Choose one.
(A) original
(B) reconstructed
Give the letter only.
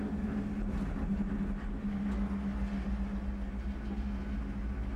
A